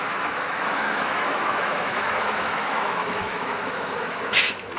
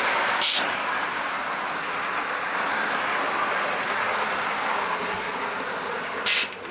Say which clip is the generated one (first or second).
first